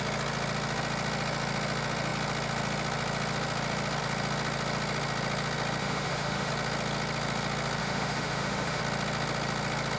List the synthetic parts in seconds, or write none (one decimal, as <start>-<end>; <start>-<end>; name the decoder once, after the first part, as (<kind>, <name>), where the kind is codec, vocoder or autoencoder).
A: 5.8-6.5 (autoencoder, DAC-VAE); 7.8-8.8